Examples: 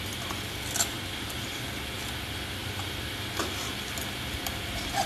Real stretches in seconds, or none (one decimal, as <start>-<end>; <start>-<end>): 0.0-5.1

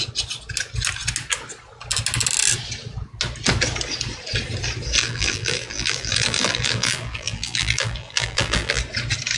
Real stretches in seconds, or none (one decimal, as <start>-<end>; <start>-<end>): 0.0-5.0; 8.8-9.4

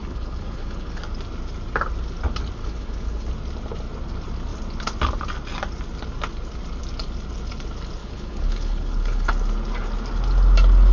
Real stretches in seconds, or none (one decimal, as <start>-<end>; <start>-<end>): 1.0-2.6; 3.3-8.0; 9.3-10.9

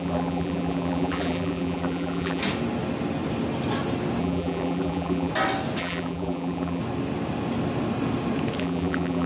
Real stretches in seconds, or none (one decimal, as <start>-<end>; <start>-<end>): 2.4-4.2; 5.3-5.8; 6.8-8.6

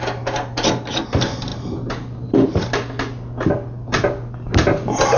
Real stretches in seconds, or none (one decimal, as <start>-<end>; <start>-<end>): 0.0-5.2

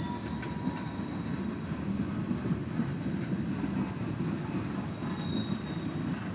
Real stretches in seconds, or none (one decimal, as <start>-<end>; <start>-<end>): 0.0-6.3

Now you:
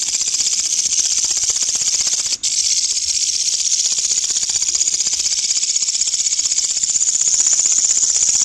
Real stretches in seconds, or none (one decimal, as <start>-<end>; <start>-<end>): 0.0-8.4

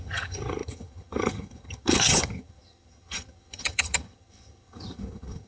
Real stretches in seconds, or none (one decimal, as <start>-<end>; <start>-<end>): none